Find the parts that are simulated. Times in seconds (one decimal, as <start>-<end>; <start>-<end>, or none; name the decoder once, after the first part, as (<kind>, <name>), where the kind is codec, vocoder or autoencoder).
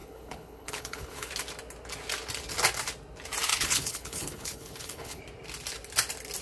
0.0-1.3 (codec, HILCodec); 3.5-5.2